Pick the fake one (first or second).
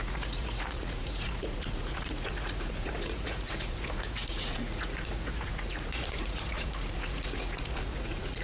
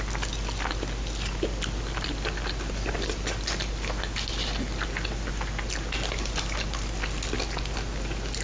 first